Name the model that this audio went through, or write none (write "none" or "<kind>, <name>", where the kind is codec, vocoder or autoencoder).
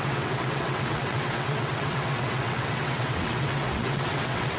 vocoder, WaveNeXt